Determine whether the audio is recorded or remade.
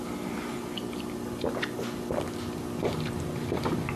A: recorded